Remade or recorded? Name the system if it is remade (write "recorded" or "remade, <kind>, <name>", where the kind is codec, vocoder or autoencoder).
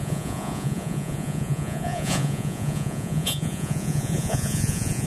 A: remade, vocoder, Vocos